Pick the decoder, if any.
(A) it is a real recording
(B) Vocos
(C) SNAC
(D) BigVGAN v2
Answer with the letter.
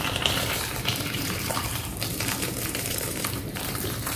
D